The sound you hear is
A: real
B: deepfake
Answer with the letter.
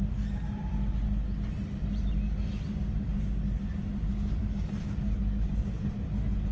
A